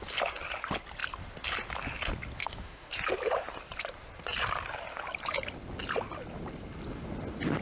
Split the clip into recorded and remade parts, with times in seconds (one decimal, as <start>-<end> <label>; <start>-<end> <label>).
0.0-2.4 recorded; 2.4-2.9 remade; 2.9-7.6 recorded